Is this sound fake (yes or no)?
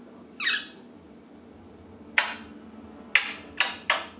no